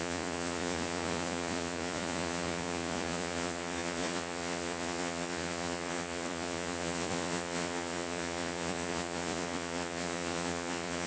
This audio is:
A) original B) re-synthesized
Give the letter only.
B